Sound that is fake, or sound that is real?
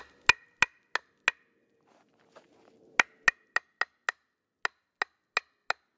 real